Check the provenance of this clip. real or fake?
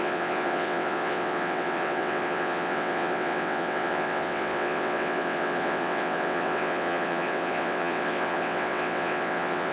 fake